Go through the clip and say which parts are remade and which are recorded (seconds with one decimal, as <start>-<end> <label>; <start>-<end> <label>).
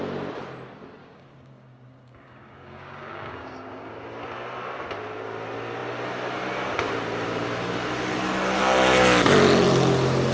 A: 0.0-1.0 recorded; 1.0-3.9 remade; 3.9-10.3 recorded